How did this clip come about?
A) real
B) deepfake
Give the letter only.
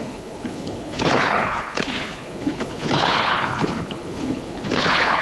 B